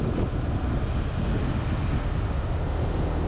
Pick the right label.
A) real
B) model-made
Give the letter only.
A